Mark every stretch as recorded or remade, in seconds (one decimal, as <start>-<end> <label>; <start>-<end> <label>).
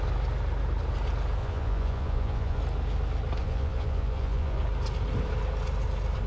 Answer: 0.0-1.4 recorded; 1.4-2.6 remade; 2.6-3.4 recorded; 3.4-4.6 remade; 4.6-6.3 recorded